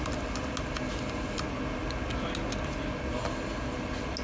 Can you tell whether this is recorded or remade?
recorded